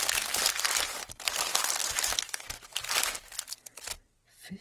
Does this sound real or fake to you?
real